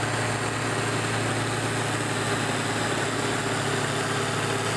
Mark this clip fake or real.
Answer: real